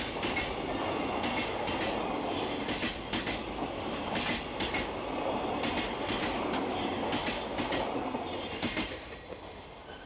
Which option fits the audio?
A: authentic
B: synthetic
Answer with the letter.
A